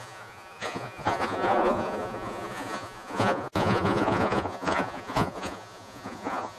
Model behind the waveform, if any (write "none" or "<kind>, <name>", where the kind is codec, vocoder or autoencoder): vocoder, Vocos